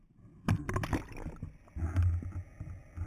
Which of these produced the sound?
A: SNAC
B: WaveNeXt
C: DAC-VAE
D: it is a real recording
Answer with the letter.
D